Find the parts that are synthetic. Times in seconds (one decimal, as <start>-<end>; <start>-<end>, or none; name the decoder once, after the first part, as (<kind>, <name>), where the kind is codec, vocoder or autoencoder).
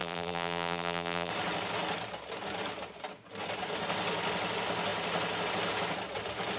0.0-1.3 (vocoder, BigVGAN v2)